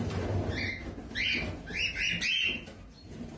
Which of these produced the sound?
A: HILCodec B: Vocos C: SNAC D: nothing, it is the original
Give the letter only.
D